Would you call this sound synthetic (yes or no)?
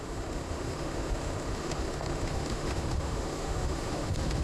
yes